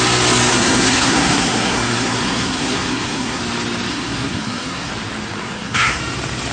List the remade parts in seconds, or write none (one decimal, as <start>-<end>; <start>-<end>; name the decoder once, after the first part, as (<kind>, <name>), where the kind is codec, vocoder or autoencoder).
0.5-3.4 (codec, SNAC); 3.9-4.9; 5.4-6.0